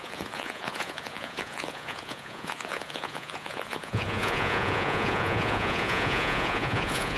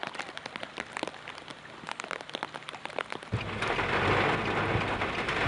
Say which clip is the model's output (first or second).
first